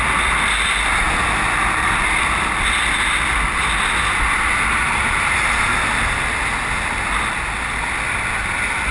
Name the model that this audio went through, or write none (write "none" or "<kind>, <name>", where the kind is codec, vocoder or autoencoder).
none